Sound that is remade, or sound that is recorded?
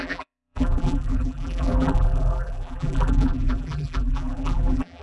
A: remade